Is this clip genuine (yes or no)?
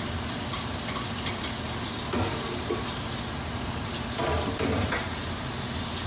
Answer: yes